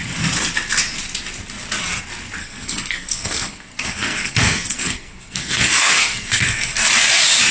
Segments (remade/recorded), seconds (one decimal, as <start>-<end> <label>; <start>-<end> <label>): 0.0-2.4 recorded; 2.4-6.9 remade; 6.9-7.5 recorded